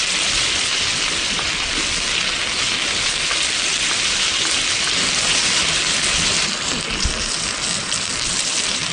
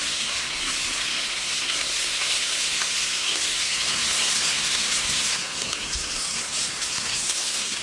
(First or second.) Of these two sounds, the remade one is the second